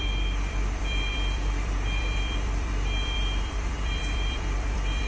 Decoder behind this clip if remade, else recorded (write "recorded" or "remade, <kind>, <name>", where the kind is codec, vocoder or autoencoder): remade, vocoder, BigVGAN v2